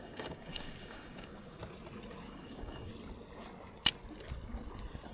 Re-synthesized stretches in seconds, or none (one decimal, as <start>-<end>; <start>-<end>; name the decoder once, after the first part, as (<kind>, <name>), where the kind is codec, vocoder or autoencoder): 0.0-1.6 (codec, DAC); 2.3-2.9

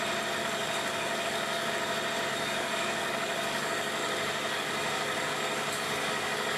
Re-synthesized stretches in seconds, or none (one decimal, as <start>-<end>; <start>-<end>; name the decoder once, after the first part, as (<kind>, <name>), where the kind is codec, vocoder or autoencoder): 0.4-1.7 (codec, DAC); 2.3-6.6

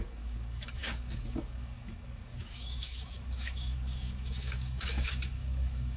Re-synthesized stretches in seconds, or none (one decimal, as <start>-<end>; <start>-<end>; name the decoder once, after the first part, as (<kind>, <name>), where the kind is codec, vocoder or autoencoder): 0.0-6.0 (codec, DAC)

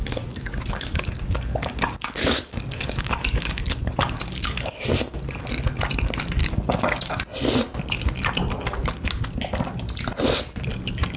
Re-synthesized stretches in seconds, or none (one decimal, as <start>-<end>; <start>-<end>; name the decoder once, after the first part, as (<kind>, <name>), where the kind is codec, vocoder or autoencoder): 0.0-4.8 (codec, DAC); 6.4-7.2

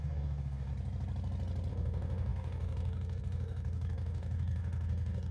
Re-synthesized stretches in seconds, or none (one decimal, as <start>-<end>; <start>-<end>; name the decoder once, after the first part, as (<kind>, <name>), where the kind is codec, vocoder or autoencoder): 0.0-0.7 (codec, DAC); 1.7-5.3